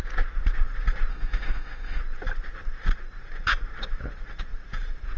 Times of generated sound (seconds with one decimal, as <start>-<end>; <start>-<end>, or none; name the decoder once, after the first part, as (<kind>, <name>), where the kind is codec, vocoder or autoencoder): 1.1-2.0 (autoencoder, DAC-VAE)